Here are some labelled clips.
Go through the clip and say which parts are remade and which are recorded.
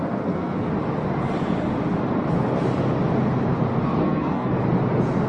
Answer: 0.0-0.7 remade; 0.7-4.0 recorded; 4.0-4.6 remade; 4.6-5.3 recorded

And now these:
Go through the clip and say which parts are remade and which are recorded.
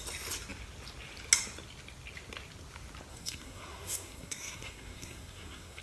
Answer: 0.0-3.1 recorded; 3.1-5.8 remade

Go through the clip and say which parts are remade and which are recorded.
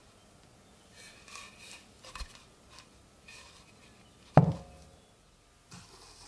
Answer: 0.0-6.3 recorded